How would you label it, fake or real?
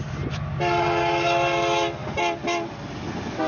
real